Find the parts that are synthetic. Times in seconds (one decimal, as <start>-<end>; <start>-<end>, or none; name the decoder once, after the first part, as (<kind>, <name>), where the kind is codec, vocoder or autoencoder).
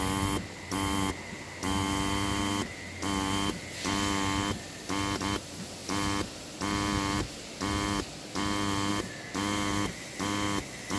none